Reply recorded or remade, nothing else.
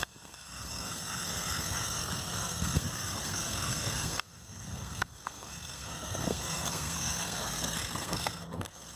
remade